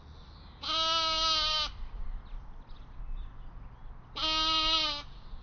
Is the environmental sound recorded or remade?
recorded